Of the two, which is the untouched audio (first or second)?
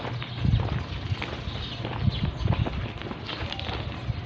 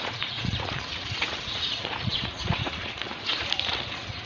first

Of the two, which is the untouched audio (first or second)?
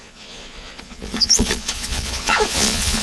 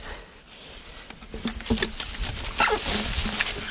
second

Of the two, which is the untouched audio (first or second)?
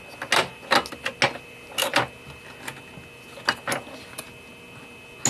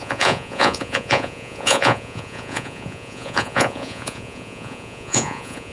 first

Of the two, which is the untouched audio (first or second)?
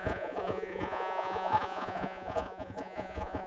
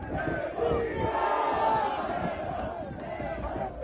second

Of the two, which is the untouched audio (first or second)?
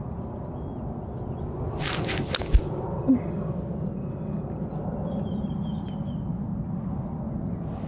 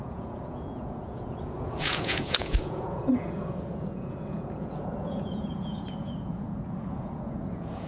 first